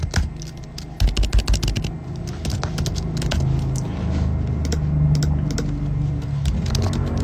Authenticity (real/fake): real